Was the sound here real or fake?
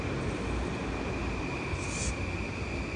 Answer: real